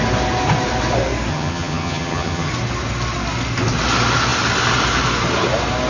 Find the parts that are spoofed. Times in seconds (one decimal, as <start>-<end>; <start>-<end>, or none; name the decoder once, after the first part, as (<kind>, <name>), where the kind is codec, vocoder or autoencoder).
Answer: 1.3-2.5 (vocoder, HiFi-GAN)